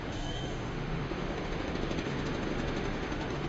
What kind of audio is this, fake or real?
fake